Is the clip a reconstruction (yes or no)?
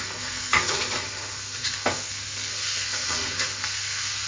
yes